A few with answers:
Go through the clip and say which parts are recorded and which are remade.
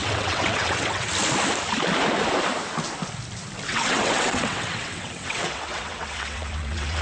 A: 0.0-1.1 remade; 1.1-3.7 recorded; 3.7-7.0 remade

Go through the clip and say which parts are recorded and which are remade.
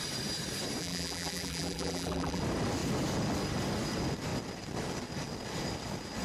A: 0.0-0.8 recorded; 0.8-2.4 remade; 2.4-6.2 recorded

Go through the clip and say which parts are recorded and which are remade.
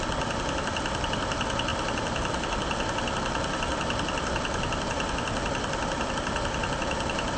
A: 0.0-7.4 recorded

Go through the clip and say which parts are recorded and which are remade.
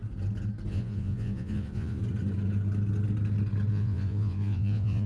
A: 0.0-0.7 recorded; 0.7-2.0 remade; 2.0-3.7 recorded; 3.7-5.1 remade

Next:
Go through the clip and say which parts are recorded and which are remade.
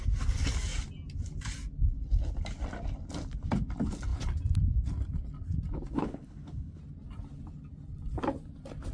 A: 0.0-6.0 recorded; 6.0-6.8 remade; 6.8-8.9 recorded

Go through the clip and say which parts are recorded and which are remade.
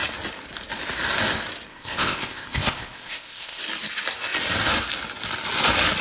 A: 0.0-1.7 recorded; 1.7-3.6 remade; 3.6-6.0 recorded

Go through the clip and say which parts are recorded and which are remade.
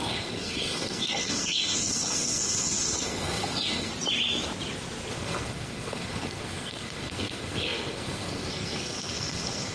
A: 0.0-3.9 remade; 3.9-5.1 recorded; 5.1-9.7 remade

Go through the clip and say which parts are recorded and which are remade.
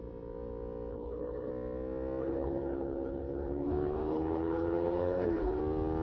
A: 0.0-0.9 recorded; 0.9-1.5 remade; 1.5-2.2 recorded; 2.2-5.6 remade; 5.6-6.0 recorded